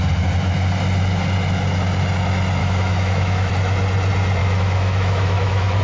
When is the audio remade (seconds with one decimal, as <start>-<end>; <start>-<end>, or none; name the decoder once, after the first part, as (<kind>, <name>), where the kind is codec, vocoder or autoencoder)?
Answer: 2.6-3.5 (autoencoder, DAC-VAE); 4.4-5.8